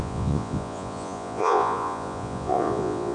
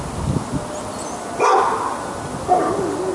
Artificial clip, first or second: first